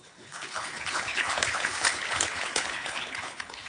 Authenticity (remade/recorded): remade